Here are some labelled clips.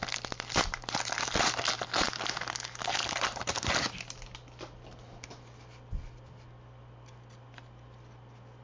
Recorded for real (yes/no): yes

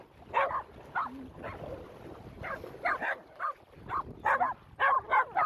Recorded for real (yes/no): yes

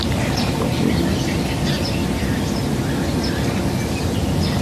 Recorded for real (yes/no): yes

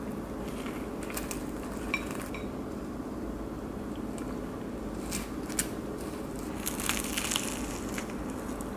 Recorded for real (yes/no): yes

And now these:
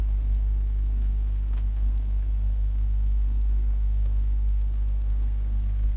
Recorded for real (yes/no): no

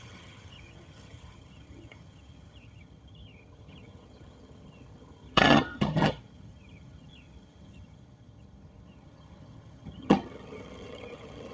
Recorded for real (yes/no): no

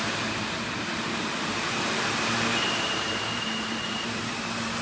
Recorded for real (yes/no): no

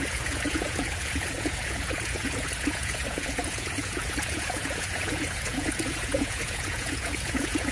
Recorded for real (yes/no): no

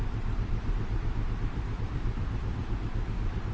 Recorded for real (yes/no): no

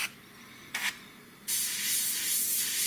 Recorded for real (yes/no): yes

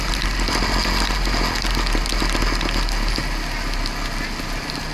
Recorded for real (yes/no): yes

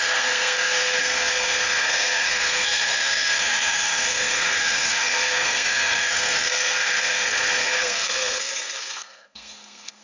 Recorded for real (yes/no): no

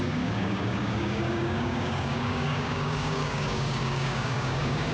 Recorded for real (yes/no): no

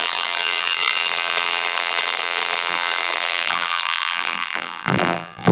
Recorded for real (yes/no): no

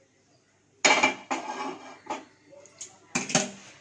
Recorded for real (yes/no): yes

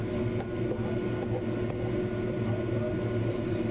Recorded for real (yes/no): yes